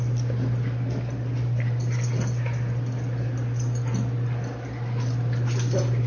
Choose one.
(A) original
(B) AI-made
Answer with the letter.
A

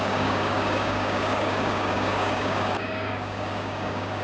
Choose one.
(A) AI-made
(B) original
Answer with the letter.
A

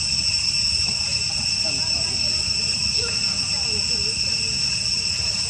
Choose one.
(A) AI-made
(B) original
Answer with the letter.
B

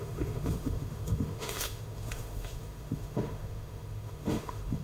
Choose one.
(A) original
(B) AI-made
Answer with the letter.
B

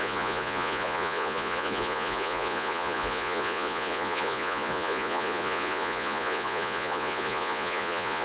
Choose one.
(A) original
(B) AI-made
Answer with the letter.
B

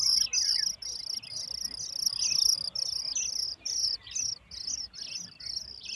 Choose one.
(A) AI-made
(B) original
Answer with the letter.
B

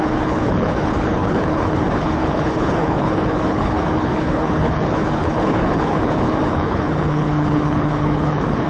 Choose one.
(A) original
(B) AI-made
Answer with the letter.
B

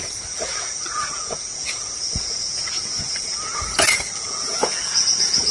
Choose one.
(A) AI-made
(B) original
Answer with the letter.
A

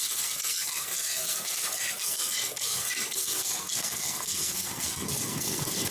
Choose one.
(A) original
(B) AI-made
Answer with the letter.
B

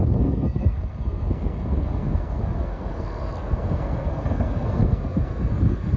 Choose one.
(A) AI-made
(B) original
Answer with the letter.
A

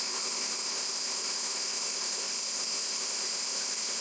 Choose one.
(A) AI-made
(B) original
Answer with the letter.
A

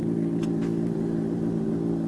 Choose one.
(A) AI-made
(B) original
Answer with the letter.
B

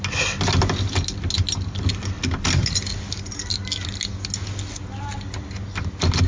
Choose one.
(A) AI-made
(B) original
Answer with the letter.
B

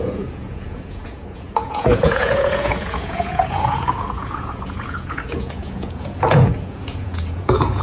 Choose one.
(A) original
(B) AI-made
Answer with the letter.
B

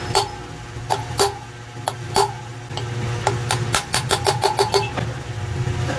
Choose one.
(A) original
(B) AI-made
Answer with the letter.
A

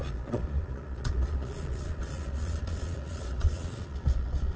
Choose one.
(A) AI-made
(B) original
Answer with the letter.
A